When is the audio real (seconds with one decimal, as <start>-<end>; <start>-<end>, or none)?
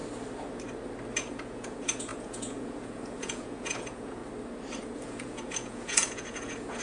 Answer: 0.0-1.2; 4.2-4.8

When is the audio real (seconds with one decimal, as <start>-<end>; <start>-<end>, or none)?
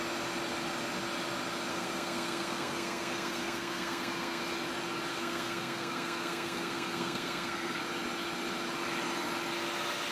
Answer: 0.0-1.7; 4.4-5.1; 7.8-10.1